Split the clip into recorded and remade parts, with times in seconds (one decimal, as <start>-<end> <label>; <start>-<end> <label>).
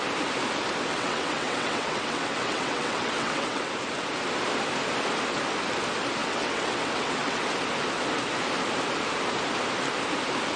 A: 0.0-0.9 recorded; 0.9-3.7 remade; 3.7-6.2 recorded; 6.2-7.4 remade; 7.4-10.6 recorded